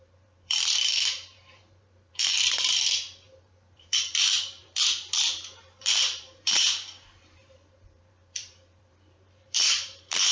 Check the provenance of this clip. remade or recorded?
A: remade